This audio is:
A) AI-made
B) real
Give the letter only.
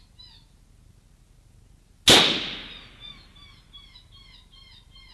B